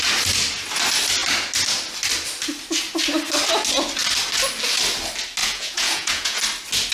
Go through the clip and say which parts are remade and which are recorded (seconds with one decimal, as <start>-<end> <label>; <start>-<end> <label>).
0.0-5.4 recorded; 5.4-6.4 remade; 6.4-6.9 recorded